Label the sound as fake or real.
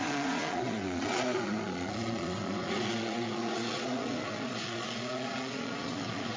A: fake